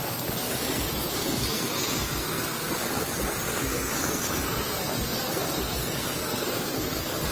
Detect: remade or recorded remade